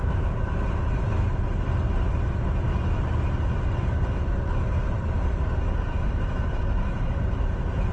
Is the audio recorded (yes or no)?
yes